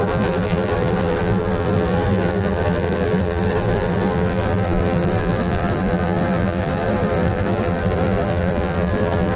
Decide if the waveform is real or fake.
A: fake